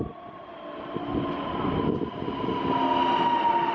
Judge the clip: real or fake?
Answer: real